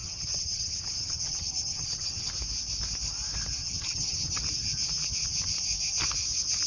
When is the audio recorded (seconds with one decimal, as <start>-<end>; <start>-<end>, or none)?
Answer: 2.3-3.6; 4.4-6.7

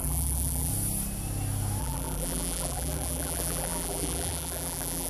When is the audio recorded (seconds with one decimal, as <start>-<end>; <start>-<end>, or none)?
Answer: 0.7-1.8

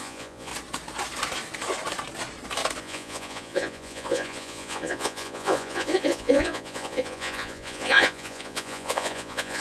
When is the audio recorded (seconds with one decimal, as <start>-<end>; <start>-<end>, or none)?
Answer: 0.5-2.8

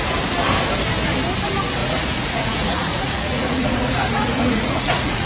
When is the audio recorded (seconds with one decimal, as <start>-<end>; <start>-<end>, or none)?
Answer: 0.0-1.8

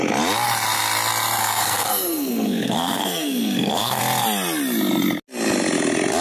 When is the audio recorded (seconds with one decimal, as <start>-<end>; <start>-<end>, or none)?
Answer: 0.0-1.4; 4.0-6.2

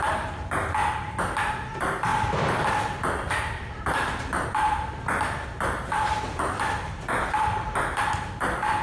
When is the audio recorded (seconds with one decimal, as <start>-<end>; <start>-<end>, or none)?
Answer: 0.0-8.8

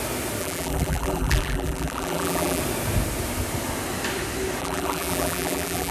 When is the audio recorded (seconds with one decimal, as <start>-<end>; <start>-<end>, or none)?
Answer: 0.0-0.4; 2.6-4.6

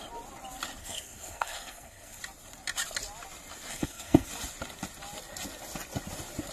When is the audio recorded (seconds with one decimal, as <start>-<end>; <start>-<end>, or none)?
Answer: 0.0-0.8; 2.2-3.7; 4.3-6.5